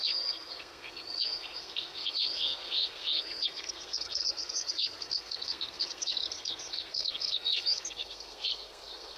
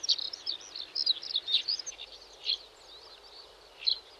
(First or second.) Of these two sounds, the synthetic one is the first